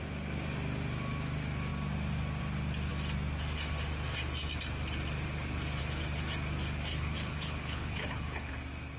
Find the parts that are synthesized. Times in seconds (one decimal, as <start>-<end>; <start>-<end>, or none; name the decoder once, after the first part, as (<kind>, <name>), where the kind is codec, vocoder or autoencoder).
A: 6.9-8.5 (codec, HILCodec)